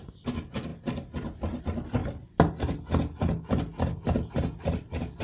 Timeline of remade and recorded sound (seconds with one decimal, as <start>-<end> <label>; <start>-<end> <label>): 0.0-5.2 recorded